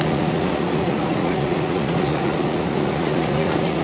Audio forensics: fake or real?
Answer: fake